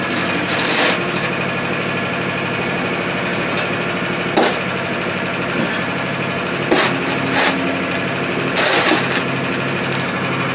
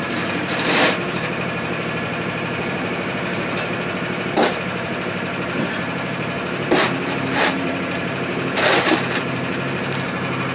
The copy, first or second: second